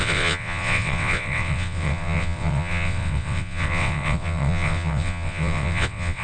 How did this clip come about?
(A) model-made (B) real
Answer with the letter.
A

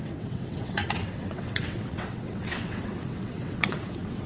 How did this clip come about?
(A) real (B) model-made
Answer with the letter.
B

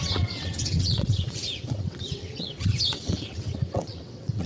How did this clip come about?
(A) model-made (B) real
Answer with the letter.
A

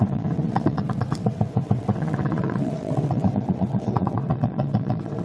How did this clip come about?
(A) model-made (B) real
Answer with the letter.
A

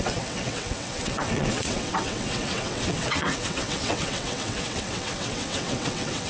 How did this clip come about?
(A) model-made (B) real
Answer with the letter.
A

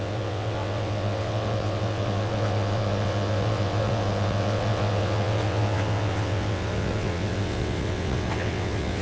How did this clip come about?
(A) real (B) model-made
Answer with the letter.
B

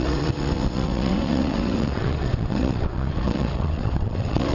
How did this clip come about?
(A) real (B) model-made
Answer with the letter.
B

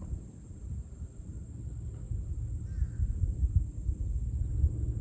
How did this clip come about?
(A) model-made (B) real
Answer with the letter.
B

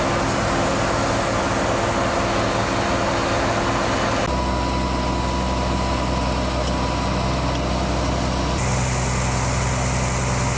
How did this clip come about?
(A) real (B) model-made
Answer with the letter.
A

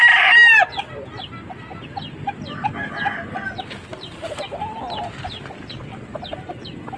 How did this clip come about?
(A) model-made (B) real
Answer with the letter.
B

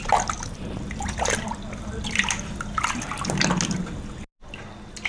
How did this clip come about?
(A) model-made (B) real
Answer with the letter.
B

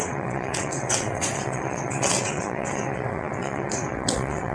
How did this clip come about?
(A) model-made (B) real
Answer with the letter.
A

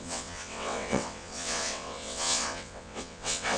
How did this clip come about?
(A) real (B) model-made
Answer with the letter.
B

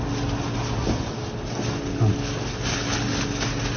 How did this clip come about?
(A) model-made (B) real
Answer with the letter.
B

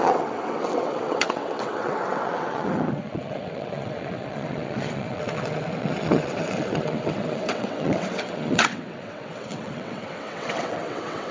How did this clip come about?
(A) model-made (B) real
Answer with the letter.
A